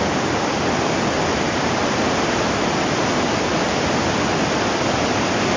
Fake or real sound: real